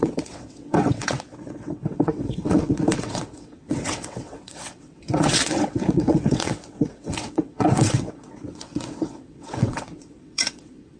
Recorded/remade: remade